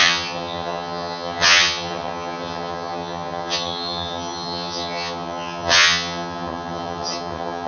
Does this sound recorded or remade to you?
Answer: remade